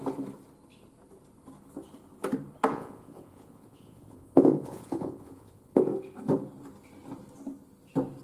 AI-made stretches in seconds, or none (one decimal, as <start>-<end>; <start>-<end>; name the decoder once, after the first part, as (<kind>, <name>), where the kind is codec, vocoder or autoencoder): 2.7-5.9 (vocoder, Vocos)